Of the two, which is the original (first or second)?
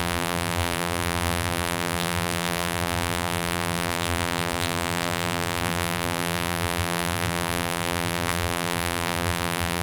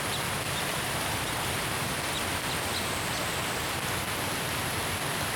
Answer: second